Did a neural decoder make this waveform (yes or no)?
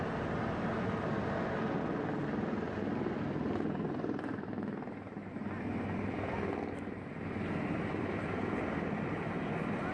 no